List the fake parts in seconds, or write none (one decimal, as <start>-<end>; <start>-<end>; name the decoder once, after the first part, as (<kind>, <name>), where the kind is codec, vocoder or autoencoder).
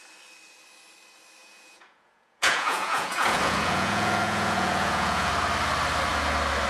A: 1.4-5.3 (vocoder, Vocos)